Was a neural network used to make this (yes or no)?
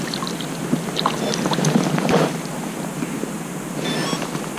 no